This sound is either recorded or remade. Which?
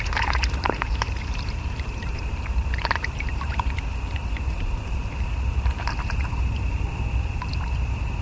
remade